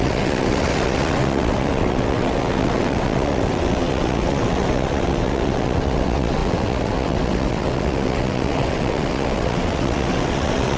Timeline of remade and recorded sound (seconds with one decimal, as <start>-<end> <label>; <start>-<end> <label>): 0.0-10.8 remade